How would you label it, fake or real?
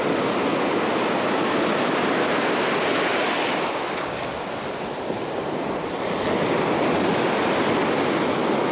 real